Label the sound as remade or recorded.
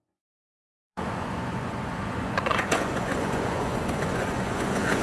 remade